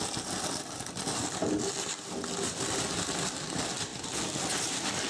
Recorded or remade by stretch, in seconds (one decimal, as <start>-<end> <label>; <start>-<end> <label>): 0.0-5.1 recorded